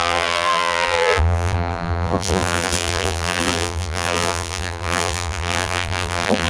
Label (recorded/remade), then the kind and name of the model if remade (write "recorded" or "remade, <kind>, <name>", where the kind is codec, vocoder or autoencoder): remade, vocoder, BigVGAN v2